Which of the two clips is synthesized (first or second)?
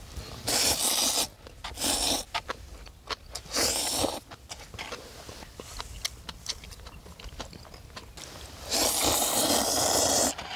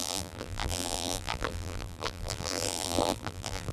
second